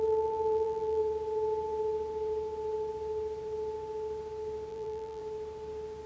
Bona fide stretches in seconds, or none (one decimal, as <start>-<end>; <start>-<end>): 1.0-4.7; 5.2-6.1